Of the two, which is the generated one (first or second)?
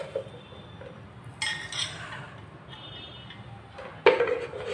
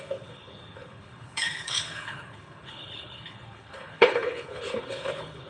second